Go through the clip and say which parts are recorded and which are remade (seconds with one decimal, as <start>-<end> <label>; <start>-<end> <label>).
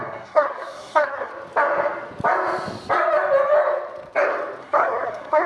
0.0-1.3 remade; 1.3-4.6 recorded; 4.6-5.5 remade